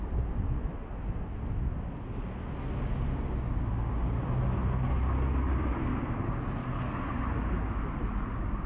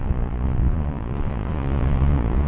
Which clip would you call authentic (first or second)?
first